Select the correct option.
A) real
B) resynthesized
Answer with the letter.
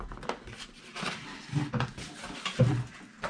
A